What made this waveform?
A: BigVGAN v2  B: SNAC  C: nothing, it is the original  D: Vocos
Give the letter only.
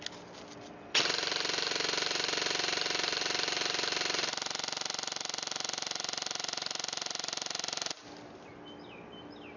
C